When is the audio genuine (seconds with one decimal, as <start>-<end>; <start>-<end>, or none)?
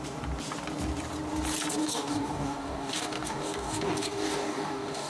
0.0-1.8